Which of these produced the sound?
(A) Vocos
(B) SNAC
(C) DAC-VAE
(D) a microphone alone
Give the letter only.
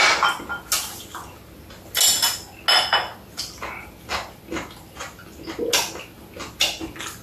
D